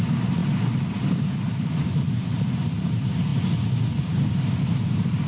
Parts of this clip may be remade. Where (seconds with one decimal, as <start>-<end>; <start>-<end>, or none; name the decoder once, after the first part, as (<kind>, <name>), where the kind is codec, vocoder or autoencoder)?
0.0-0.4 (vocoder, BigVGAN v2); 0.9-3.3; 4.0-5.3